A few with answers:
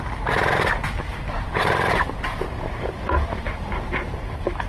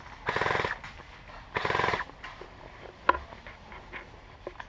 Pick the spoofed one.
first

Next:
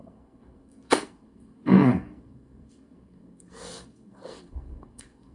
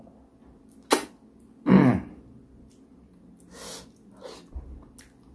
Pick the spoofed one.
first